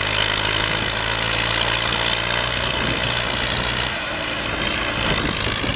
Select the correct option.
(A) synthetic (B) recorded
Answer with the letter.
B